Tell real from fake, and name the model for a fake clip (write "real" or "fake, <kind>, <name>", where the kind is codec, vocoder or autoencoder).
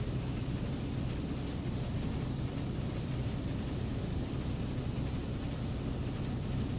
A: fake, vocoder, BigVGAN v2